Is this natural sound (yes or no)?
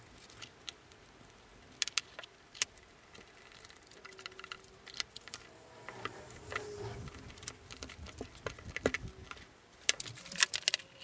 yes